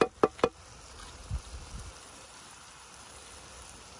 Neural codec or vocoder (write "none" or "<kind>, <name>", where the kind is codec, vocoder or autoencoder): none